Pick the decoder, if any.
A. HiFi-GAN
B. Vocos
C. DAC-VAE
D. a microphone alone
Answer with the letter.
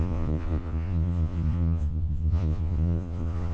B